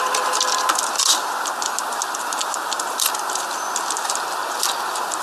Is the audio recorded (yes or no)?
yes